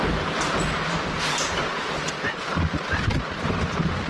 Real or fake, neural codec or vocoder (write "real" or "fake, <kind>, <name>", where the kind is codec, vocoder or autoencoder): real